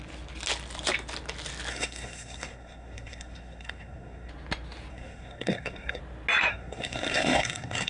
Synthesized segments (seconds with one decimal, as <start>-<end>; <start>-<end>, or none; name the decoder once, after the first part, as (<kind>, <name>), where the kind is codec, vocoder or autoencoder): 1.7-4.3 (codec, SNAC); 4.9-6.0; 6.5-7.9